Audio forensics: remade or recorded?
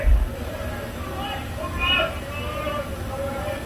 recorded